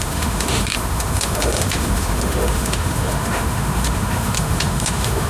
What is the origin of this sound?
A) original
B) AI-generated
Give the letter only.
B